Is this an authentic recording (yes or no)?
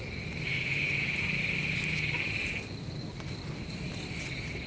yes